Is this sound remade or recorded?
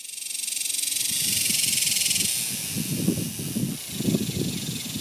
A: recorded